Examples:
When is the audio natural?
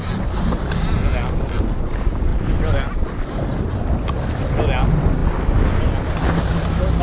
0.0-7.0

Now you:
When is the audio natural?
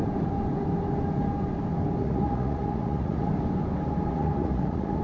0.0-2.0; 3.3-4.1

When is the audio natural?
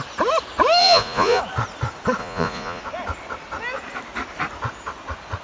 0.0-0.8; 1.4-2.2; 2.8-5.4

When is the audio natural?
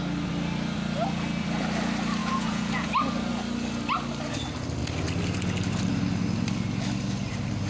0.0-2.2; 2.9-7.7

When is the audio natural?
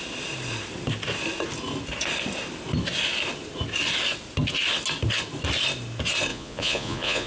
0.0-6.3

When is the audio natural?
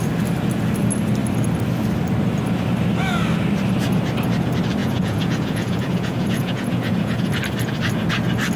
0.0-4.8; 7.4-8.6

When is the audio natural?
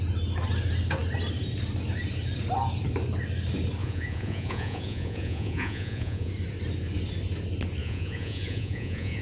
0.0-3.8; 6.3-7.8